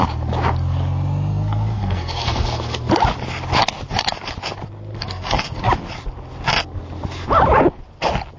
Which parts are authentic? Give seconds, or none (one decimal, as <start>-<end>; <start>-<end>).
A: 0.0-1.3; 2.9-4.9; 5.7-8.4